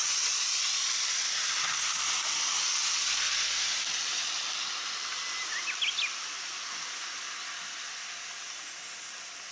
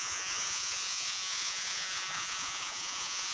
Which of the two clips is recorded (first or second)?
first